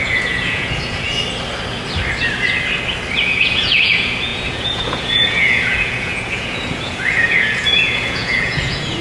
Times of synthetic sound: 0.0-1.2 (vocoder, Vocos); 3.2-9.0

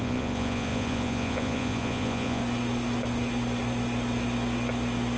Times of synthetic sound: 0.0-2.4 (vocoder, Vocos)

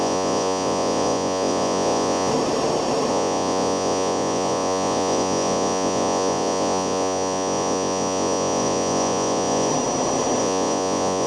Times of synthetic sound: 0.0-2.3 (vocoder, Vocos); 3.1-9.7; 10.4-11.3

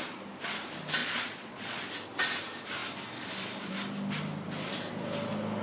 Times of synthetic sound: 1.0-1.8 (vocoder, Vocos)

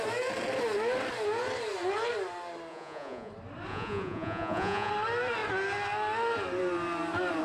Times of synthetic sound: 2.7-3.3 (vocoder, Vocos); 3.7-4.9

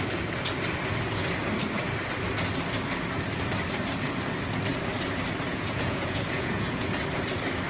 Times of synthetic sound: 5.5-7.0 (vocoder, Vocos)

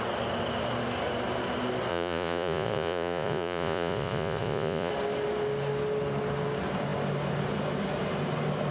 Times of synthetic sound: 1.9-4.9 (vocoder, Vocos)

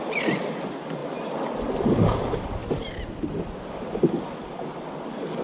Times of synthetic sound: none